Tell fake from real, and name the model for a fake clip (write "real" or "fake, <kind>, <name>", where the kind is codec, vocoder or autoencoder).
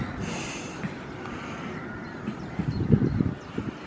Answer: fake, vocoder, BigVGAN v2